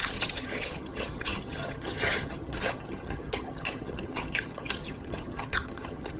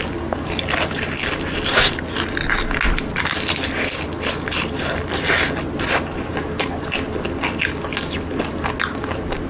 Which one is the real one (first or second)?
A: second